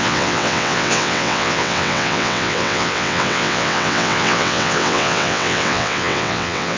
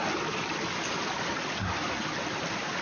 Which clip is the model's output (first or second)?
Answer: first